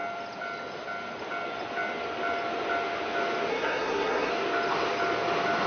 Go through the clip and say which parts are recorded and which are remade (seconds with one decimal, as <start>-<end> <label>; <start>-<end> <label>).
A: 0.0-3.5 recorded; 3.5-4.3 remade; 4.3-5.7 recorded